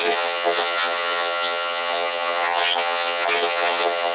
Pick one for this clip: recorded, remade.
remade